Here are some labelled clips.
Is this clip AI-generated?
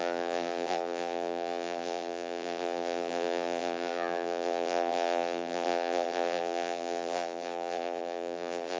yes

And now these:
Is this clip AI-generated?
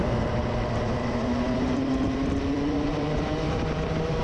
yes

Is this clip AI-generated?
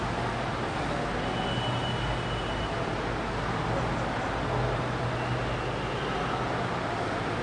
no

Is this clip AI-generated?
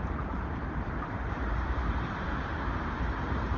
yes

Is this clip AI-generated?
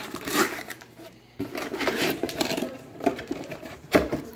yes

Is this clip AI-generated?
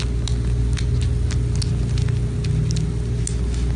no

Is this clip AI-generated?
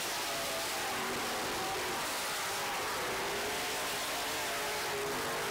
no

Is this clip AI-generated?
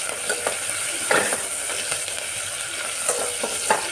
no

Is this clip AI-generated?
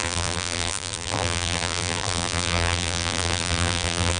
yes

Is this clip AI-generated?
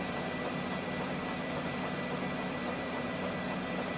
no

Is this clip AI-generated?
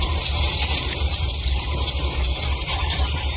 yes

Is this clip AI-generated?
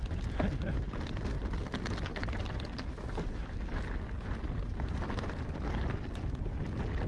no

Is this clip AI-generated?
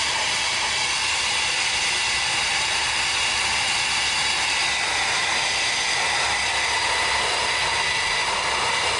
no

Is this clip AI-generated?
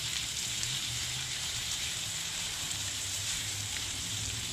yes